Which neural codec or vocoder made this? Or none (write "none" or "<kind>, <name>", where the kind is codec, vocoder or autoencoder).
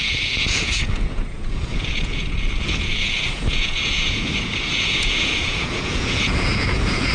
vocoder, Vocos